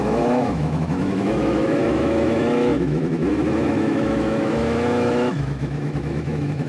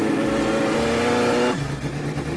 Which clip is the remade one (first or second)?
first